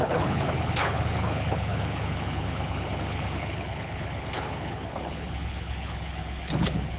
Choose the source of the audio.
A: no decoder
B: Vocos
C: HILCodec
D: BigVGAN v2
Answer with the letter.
C